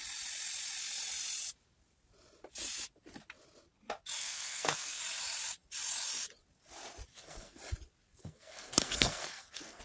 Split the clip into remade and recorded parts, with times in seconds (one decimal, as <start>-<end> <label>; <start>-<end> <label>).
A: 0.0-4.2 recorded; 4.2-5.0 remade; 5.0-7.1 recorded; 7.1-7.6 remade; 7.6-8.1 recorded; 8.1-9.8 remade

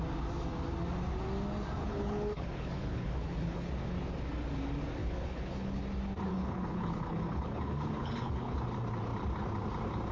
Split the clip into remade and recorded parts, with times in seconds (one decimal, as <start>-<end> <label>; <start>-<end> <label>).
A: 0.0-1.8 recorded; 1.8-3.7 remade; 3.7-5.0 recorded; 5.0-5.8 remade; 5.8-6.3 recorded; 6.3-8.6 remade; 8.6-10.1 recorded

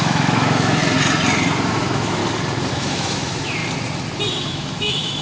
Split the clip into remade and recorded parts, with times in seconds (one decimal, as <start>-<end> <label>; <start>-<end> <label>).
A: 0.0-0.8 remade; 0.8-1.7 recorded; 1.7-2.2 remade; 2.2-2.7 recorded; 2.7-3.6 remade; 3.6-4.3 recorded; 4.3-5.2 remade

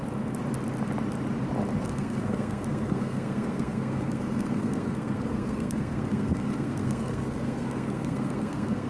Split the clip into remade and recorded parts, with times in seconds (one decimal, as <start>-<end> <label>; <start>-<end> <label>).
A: 0.0-1.8 recorded; 1.8-8.9 remade